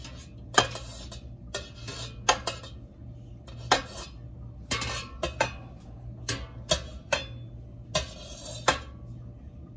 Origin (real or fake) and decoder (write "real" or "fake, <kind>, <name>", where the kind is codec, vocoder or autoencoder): real